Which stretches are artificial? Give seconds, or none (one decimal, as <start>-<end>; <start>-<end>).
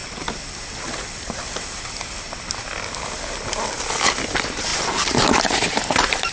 4.7-6.3